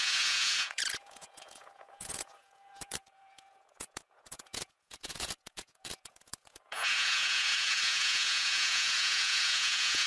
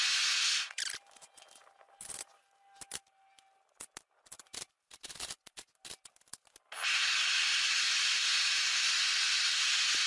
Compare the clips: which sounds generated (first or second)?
first